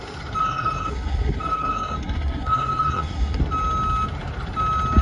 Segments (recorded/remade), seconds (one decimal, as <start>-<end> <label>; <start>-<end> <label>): 0.0-0.4 recorded; 0.4-3.4 remade; 3.4-5.0 recorded